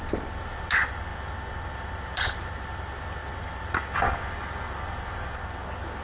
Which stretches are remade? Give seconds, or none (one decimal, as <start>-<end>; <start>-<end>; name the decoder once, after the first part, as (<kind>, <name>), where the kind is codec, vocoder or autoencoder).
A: none